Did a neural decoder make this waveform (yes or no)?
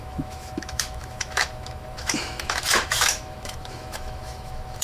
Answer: yes